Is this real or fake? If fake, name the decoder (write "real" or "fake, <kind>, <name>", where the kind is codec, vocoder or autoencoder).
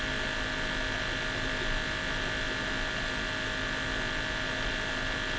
real